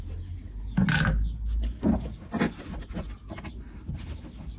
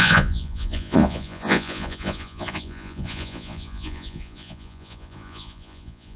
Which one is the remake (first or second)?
second